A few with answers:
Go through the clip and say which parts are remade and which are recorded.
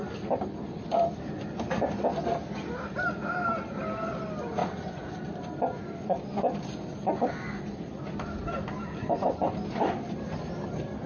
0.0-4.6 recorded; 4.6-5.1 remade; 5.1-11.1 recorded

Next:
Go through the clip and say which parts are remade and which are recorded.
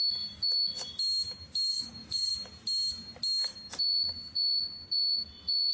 0.0-1.7 recorded; 1.7-2.3 remade; 2.3-5.7 recorded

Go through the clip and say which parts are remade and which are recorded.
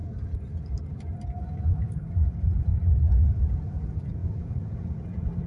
0.0-1.9 recorded; 1.9-2.7 remade; 2.7-3.2 recorded; 3.2-5.5 remade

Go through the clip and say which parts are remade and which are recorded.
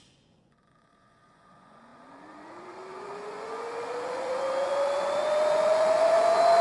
0.0-6.6 remade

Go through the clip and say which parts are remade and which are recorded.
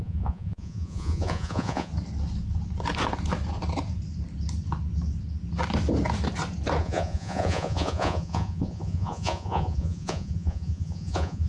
0.0-1.9 remade; 1.9-6.8 recorded; 6.8-11.5 remade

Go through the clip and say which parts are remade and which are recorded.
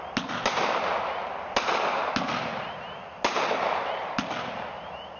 0.0-5.2 recorded